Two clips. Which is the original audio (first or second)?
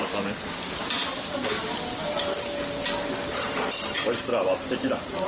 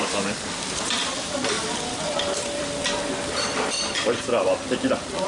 first